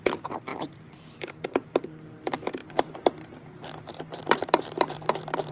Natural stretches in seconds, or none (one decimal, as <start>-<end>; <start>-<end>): none